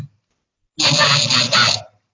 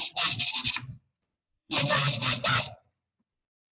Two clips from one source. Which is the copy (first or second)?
second